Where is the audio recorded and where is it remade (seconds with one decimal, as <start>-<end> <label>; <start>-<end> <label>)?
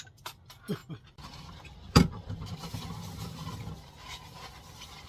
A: 0.0-5.1 recorded